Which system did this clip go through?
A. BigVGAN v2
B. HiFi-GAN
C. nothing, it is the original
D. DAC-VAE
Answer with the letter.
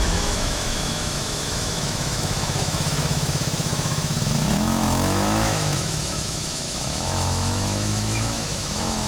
D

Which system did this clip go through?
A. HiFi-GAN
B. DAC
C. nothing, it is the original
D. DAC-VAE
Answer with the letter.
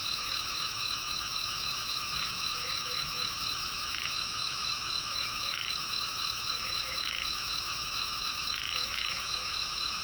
D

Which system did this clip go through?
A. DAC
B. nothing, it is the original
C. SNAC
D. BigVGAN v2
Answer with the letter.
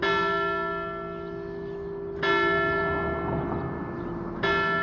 B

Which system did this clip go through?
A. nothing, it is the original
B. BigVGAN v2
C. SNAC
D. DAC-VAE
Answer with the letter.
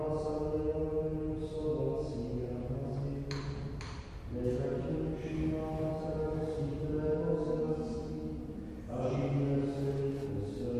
A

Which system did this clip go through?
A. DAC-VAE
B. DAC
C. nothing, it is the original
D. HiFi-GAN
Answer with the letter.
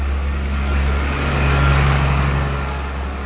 B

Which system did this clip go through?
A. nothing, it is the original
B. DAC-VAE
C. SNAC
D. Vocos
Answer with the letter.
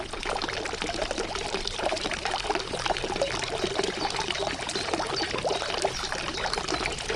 A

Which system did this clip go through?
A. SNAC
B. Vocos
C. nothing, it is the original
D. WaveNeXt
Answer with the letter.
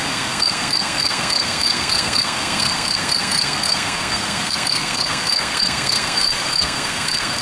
A